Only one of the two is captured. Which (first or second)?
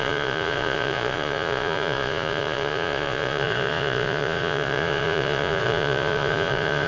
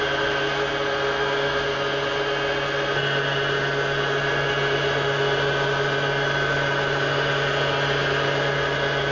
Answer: second